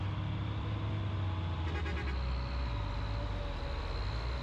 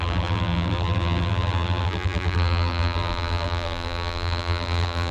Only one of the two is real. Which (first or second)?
first